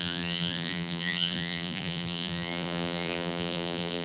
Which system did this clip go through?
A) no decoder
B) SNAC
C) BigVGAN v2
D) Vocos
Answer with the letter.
C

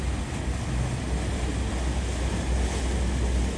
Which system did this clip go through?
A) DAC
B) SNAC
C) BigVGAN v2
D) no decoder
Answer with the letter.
D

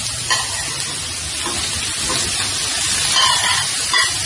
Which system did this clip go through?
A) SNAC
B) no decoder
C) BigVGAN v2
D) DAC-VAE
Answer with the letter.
B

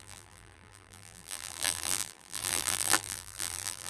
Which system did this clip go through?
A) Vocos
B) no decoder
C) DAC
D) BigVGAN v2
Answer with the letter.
D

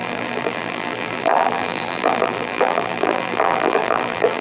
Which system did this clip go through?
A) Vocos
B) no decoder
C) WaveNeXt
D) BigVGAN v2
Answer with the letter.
D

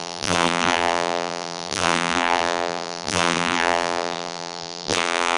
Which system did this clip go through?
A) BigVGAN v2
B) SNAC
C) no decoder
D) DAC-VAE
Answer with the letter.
A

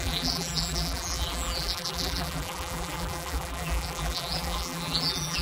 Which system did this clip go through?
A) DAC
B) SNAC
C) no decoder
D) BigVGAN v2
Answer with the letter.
D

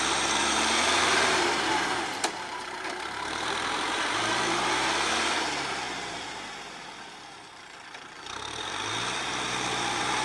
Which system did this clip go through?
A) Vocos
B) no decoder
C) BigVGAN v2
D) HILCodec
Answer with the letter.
C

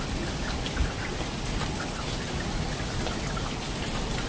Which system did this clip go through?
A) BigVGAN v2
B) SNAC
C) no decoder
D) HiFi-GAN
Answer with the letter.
C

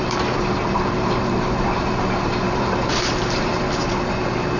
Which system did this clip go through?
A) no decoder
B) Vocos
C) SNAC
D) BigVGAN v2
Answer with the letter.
D